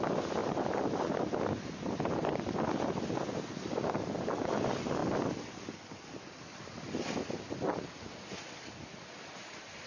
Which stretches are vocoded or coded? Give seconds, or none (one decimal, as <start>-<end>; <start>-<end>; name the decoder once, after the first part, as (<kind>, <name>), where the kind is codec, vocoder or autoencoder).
0.4-0.9 (vocoder, BigVGAN v2)